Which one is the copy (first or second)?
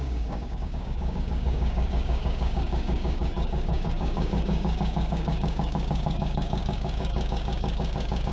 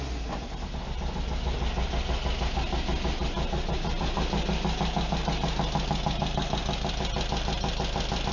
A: first